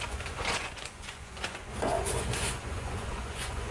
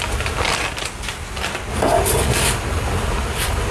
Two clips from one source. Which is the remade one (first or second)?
first